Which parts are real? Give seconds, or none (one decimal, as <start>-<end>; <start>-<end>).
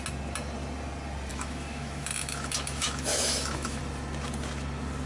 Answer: 0.0-1.3; 3.8-5.1